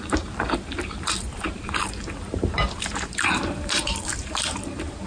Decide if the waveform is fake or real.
fake